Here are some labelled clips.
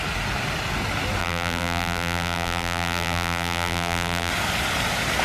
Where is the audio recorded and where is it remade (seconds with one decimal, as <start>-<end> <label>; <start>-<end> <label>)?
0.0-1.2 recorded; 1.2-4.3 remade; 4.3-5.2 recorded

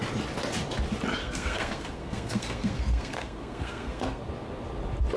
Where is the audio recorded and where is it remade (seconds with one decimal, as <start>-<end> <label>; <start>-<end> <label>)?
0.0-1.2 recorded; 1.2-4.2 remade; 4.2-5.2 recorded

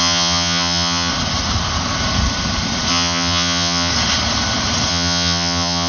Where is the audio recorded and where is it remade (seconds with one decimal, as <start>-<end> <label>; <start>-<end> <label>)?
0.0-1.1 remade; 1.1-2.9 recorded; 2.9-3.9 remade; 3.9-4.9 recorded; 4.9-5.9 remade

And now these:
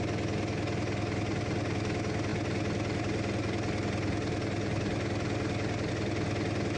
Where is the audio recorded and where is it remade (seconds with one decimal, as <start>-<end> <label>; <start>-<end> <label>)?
0.0-6.8 recorded